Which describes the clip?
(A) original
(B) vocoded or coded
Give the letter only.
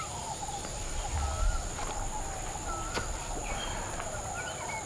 A